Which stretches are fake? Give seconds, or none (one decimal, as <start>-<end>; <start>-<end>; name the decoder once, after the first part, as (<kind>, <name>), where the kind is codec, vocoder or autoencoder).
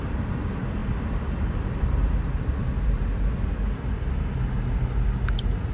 0.8-4.2 (vocoder, BigVGAN v2)